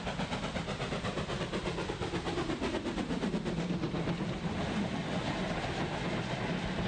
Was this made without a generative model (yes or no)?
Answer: yes